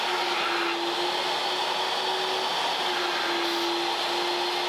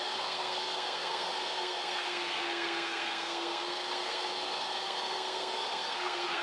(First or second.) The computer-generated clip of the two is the second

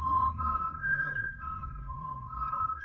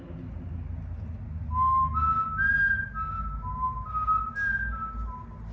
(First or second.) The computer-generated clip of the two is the first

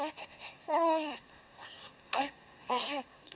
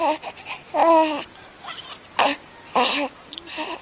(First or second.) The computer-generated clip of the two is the first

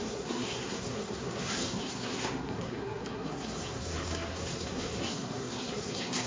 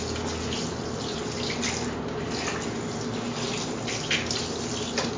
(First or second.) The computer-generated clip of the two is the first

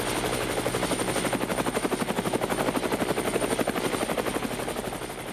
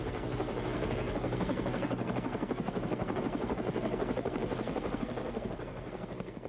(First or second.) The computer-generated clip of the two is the second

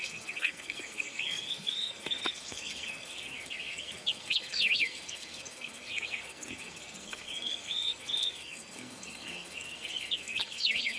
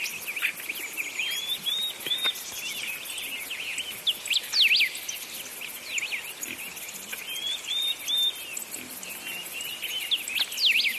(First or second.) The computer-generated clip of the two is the first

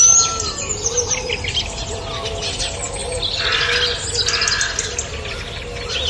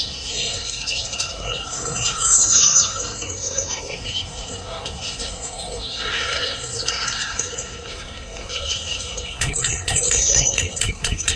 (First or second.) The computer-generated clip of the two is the second